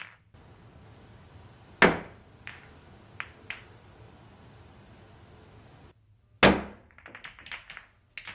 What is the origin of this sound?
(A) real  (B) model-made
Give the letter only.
A